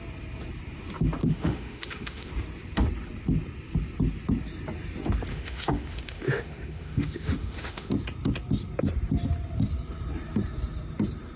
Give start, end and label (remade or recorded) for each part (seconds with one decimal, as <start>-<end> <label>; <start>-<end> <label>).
0.0-1.2 recorded; 1.2-2.3 remade; 2.3-5.3 recorded; 5.3-7.9 remade; 7.9-11.4 recorded